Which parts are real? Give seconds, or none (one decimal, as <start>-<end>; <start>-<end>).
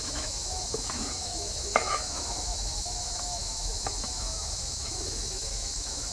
none